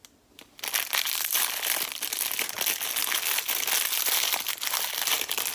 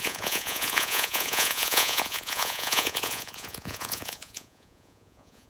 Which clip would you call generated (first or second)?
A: second